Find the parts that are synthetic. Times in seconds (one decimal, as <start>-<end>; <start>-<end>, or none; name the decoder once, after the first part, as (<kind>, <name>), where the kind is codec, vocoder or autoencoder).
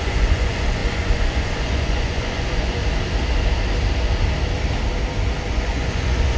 0.0-2.8 (vocoder, Vocos); 5.5-6.4